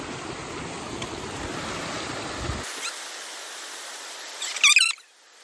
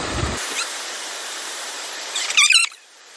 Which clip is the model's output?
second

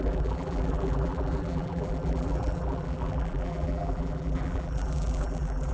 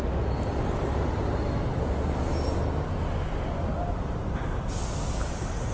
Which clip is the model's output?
first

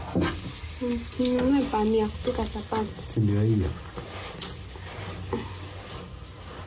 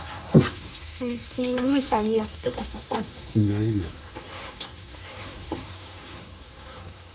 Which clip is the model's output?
second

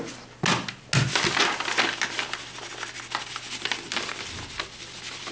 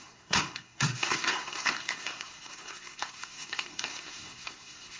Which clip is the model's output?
second